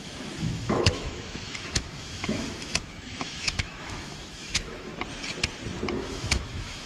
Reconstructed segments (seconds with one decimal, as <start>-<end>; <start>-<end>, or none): 0.0-4.9; 5.9-6.9